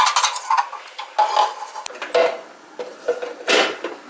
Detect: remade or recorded recorded